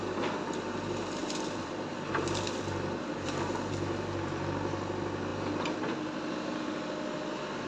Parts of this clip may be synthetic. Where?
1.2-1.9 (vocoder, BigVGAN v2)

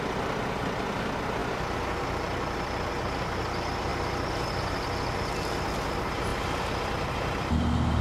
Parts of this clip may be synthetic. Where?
none

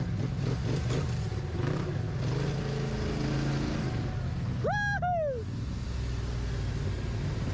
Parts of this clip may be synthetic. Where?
1.3-2.0 (vocoder, BigVGAN v2)

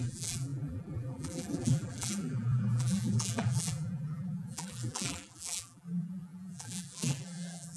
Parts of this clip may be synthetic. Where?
0.0-7.8 (vocoder, BigVGAN v2)

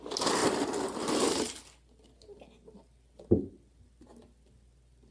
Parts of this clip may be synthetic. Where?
none

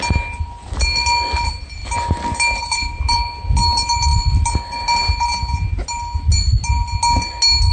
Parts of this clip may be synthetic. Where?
none

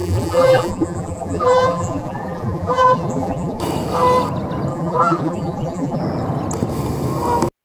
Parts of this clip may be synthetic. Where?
0.0-3.6 (vocoder, BigVGAN v2); 4.7-6.0